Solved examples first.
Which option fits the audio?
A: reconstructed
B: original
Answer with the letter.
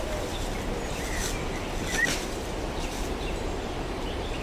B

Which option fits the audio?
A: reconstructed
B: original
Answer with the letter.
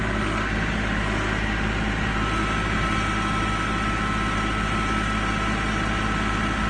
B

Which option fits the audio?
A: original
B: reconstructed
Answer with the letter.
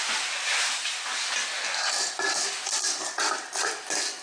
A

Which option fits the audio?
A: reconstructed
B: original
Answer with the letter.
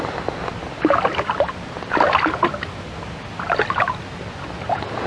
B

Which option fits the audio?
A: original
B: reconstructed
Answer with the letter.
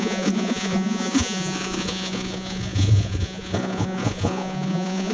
B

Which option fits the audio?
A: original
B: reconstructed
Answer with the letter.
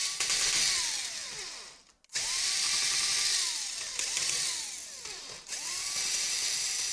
A